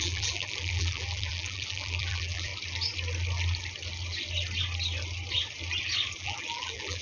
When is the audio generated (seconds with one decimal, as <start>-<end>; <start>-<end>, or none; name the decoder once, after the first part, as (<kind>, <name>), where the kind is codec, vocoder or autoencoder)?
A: 0.0-2.5 (vocoder, BigVGAN v2); 6.2-7.0